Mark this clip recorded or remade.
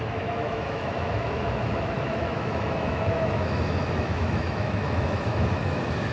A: remade